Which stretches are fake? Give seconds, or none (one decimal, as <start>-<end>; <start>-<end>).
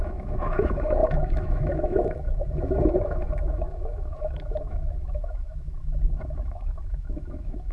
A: 0.0-7.7